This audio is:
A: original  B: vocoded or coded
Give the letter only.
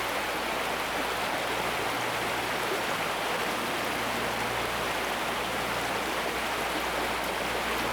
A